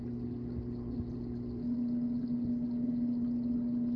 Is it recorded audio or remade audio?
recorded